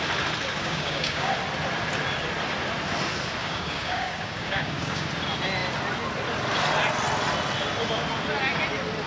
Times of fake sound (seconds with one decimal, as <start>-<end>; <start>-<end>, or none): 0.6-1.3; 3.4-5.1